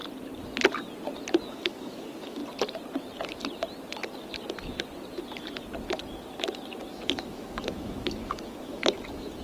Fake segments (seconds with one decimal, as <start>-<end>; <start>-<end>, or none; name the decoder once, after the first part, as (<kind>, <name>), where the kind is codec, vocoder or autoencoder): 1.5-2.4 (autoencoder, DAC-VAE); 6.9-9.4